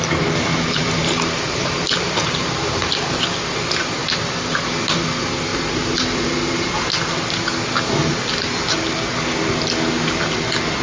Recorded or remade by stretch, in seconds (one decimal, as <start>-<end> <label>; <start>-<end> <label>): 0.0-0.5 recorded; 0.5-3.0 remade; 3.0-5.5 recorded; 5.5-6.7 remade; 6.7-10.8 recorded